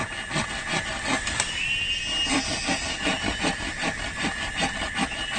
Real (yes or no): yes